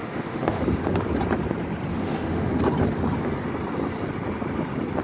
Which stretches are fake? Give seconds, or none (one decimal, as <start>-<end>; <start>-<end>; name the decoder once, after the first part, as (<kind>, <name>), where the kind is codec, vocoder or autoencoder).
0.0-0.6 (autoencoder, DAC-VAE); 1.9-2.6